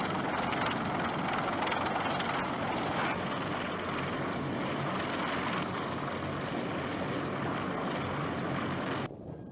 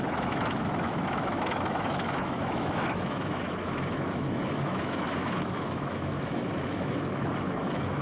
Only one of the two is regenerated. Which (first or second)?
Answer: second